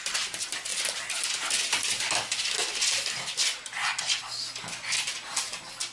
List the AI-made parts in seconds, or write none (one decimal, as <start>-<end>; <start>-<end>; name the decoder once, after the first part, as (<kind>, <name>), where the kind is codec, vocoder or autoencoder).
none